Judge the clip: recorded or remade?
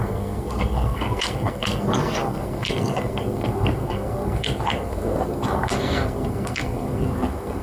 remade